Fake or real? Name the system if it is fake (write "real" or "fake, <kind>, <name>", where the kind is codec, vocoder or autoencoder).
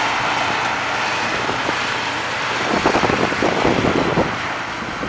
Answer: real